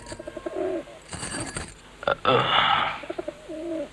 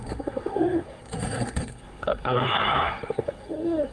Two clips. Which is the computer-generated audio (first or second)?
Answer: second